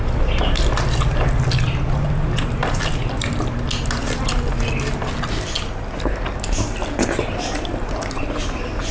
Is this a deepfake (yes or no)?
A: no